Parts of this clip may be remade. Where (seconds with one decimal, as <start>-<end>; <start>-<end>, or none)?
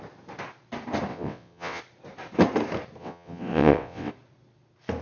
1.1-1.8; 3.0-4.1